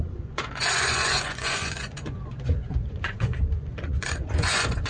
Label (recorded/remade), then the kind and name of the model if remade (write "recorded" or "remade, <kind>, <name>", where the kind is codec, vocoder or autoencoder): remade, vocoder, Vocos